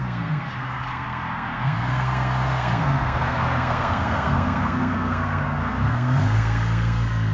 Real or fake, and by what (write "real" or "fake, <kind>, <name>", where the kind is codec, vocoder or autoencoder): fake, codec, SNAC